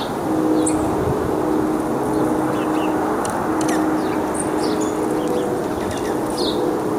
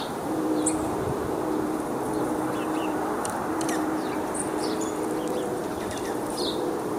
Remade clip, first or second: second